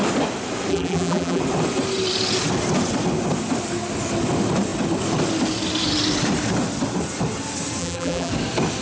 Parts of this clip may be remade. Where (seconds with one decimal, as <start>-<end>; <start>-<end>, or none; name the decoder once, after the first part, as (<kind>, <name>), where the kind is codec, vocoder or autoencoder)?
0.7-1.4 (vocoder, BigVGAN v2); 7.8-8.3